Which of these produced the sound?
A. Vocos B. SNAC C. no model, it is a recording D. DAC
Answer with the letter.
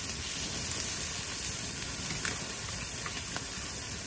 C